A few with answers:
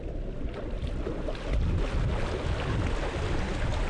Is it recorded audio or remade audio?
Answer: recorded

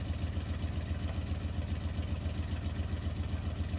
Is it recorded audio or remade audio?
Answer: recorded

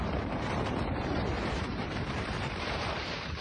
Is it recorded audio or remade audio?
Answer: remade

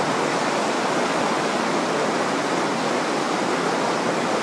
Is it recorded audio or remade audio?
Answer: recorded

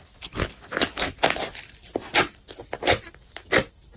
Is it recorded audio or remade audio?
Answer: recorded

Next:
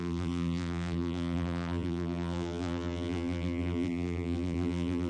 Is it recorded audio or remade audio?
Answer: remade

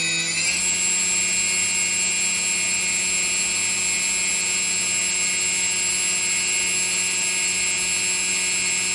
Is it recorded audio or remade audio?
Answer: recorded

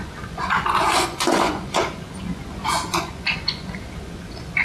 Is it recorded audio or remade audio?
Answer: remade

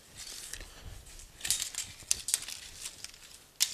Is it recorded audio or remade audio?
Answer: recorded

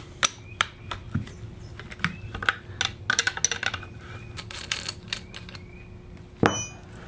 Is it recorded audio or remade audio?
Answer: recorded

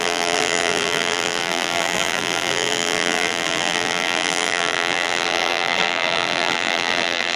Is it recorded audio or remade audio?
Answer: remade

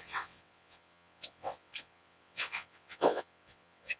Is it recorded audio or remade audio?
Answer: remade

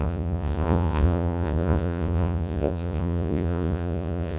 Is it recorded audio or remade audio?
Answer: remade